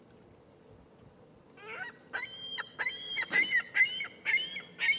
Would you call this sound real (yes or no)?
yes